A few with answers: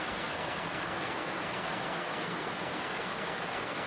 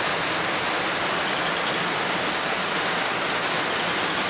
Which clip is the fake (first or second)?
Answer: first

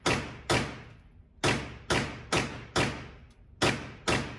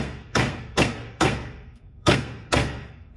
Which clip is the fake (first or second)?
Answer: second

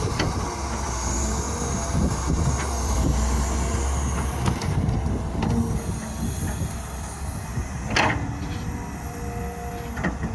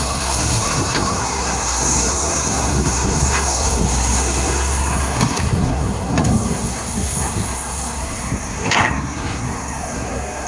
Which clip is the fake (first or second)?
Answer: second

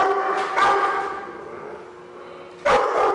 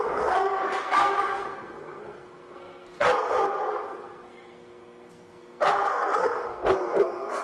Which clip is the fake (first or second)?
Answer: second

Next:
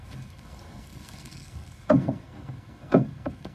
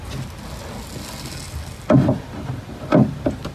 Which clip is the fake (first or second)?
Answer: first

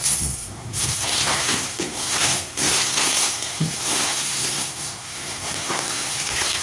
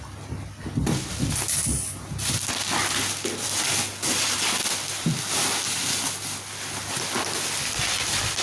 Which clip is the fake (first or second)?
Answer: first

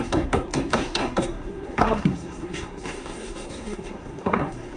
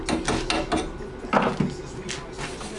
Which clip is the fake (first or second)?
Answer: first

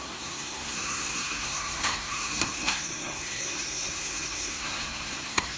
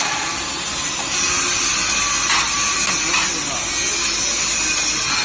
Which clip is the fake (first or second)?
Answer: first